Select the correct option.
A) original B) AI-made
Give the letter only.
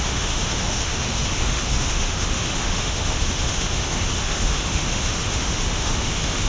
B